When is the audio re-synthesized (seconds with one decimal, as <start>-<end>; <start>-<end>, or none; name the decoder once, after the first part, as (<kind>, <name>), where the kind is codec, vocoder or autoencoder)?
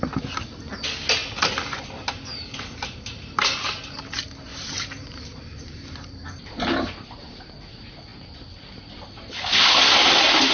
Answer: 4.5-7.4 (vocoder, BigVGAN v2)